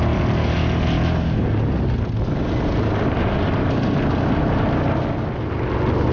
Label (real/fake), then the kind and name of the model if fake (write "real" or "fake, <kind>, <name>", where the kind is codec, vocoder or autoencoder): real